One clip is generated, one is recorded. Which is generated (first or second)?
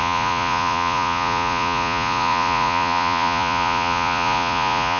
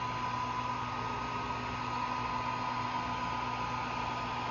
first